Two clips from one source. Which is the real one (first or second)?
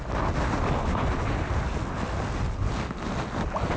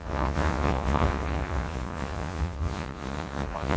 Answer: first